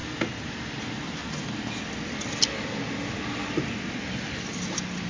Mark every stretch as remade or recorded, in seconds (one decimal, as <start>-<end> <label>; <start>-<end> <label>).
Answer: 0.0-5.1 recorded